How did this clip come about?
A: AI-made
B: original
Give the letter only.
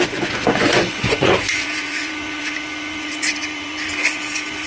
A